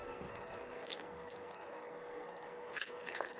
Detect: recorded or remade remade